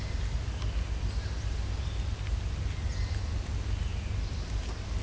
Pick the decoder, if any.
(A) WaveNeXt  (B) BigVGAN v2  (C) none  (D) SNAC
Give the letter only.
C